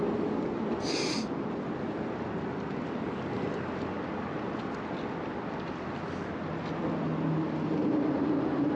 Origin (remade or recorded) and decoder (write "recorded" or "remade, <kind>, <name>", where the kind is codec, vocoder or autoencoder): recorded